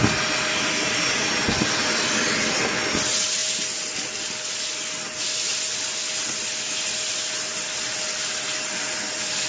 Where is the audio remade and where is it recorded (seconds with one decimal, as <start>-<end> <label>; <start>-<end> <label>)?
0.0-9.5 recorded